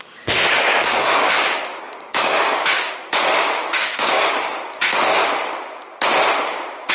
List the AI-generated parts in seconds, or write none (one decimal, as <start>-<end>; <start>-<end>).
0.0-5.2